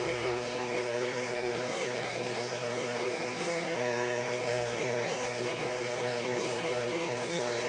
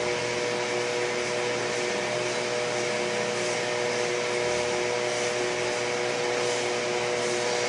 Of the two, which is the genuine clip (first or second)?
second